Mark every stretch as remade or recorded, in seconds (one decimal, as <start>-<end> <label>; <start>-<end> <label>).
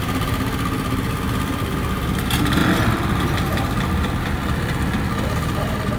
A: 0.0-6.0 recorded